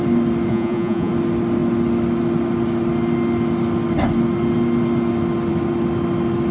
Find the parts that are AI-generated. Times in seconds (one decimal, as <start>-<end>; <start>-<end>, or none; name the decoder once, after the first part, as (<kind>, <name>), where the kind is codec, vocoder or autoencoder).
0.5-1.1 (vocoder, Vocos)